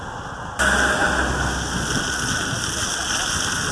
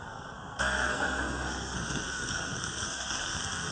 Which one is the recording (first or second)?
first